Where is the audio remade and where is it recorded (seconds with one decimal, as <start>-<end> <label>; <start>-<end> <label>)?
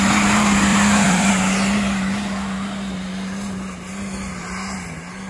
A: 0.0-0.7 recorded; 0.7-1.3 remade; 1.3-5.3 recorded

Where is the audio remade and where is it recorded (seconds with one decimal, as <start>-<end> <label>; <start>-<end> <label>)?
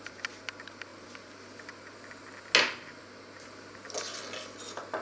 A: 0.0-5.0 recorded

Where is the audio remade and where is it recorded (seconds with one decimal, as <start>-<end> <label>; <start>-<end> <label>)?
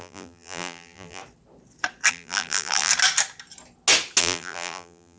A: 0.0-1.2 remade; 1.2-2.1 recorded; 2.1-2.9 remade; 2.9-4.2 recorded; 4.2-5.2 remade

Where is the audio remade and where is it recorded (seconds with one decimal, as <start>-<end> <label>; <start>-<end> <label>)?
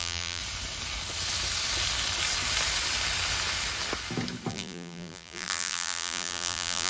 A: 0.0-0.4 remade; 0.4-4.5 recorded; 4.5-6.9 remade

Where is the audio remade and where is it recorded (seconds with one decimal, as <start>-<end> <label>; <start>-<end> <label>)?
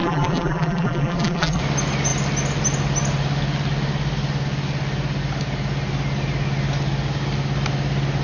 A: 0.0-1.6 remade; 1.6-8.2 recorded